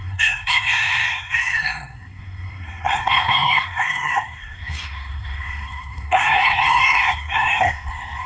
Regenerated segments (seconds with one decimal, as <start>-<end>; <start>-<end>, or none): 0.0-8.3